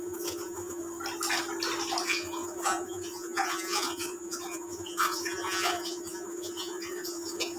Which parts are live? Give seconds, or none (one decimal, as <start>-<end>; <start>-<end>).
0.8-2.0